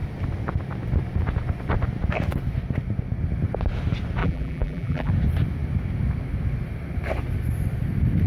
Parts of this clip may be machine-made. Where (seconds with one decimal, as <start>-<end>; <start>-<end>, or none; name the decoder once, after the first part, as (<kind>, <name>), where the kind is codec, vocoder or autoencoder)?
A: 4.2-5.1 (vocoder, BigVGAN v2)